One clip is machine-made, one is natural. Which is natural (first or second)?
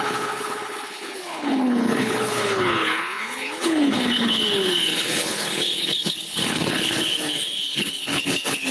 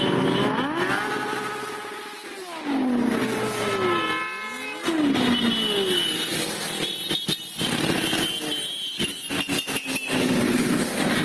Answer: second